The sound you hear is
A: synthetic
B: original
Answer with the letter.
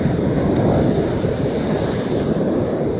A